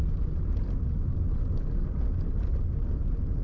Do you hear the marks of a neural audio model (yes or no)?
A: no